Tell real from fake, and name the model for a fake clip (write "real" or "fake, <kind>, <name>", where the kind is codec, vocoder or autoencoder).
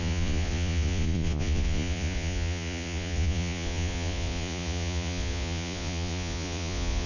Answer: fake, vocoder, Vocos